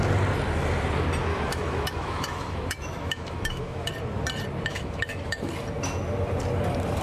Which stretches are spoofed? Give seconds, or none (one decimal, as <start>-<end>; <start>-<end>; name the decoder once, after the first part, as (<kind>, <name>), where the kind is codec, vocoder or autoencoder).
1.3-3.9 (autoencoder, DAC-VAE); 4.7-5.5